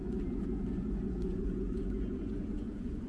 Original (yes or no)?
no